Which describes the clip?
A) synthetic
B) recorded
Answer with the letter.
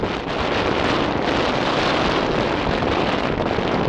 B